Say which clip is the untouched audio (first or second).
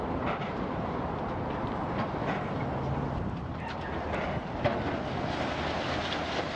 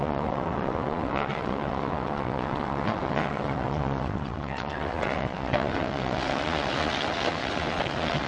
first